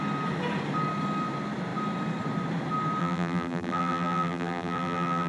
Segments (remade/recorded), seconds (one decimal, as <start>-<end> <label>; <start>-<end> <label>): 0.0-3.0 recorded; 3.0-5.3 remade